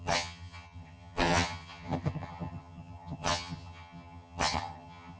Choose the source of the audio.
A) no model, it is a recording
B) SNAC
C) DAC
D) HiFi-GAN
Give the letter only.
D